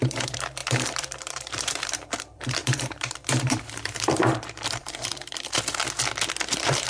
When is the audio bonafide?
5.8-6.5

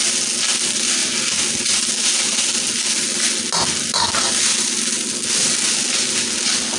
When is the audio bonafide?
0.0-6.8

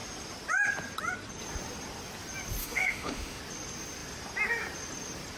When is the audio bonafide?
0.0-2.6; 3.4-5.4